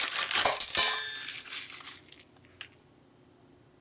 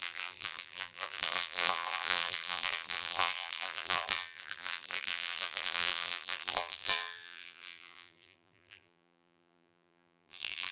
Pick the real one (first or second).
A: first